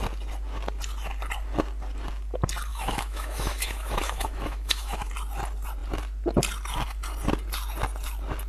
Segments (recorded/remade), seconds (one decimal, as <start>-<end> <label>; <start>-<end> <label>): 0.0-2.7 recorded; 2.7-5.1 remade; 5.1-8.5 recorded